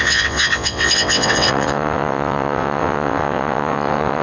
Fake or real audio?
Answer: fake